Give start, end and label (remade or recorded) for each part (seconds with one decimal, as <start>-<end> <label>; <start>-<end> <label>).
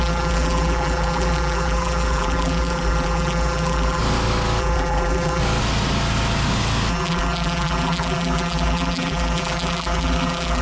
0.0-4.0 remade; 4.0-4.6 recorded; 4.6-5.4 remade; 5.4-6.9 recorded; 6.9-10.6 remade